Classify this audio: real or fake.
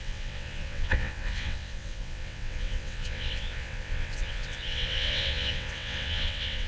fake